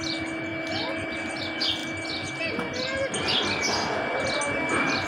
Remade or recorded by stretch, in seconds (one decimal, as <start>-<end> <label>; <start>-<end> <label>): 0.0-5.1 recorded